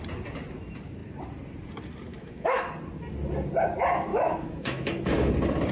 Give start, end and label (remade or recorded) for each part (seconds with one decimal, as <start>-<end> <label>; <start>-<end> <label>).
0.0-2.1 recorded; 2.1-2.7 remade; 2.7-4.1 recorded; 4.1-5.3 remade; 5.3-5.7 recorded